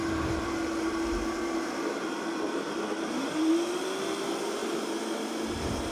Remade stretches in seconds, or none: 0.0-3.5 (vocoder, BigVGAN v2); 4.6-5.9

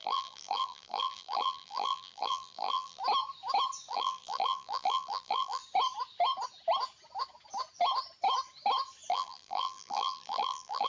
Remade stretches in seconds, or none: 0.0-3.0 (vocoder, BigVGAN v2); 3.9-5.6; 9.1-10.9

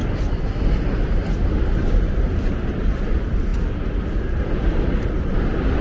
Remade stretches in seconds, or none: none

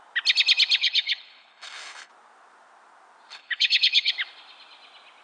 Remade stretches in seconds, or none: 0.8-2.1 (codec, HILCodec); 3.3-4.1